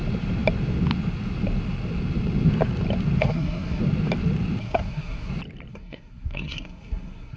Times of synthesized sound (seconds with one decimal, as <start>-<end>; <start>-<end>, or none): 3.2-3.8; 4.6-5.3; 5.7-7.4